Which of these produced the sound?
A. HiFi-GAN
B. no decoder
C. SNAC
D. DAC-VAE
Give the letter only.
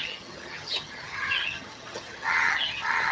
A